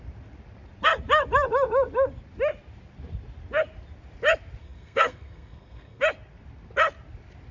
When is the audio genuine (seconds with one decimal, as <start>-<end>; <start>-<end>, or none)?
0.0-4.6; 6.0-7.5